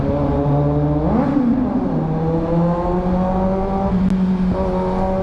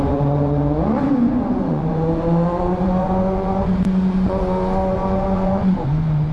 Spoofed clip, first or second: second